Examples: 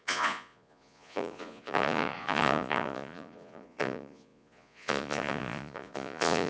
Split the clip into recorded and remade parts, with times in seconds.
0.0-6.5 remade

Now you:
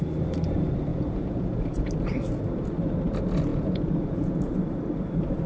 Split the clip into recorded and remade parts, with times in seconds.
0.0-0.9 recorded; 0.9-1.9 remade; 1.9-3.5 recorded; 3.5-4.4 remade; 4.4-5.5 recorded

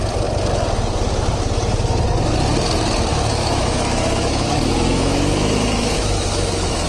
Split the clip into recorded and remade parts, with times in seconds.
0.0-3.1 recorded; 3.1-6.9 remade

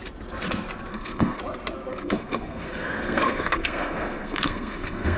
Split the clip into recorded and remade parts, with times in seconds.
0.0-0.9 recorded; 0.9-1.4 remade; 1.4-1.9 recorded; 1.9-5.2 remade

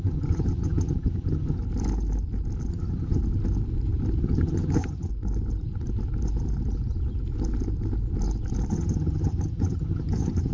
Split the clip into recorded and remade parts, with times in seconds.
0.0-1.6 remade; 1.6-2.7 recorded; 2.7-3.2 remade; 3.2-4.2 recorded; 4.2-5.1 remade; 5.1-8.7 recorded; 8.7-10.5 remade

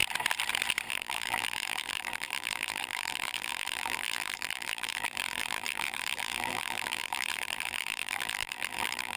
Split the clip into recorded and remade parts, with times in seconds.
0.0-0.9 recorded; 0.9-9.2 remade